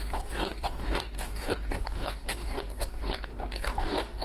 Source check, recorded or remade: remade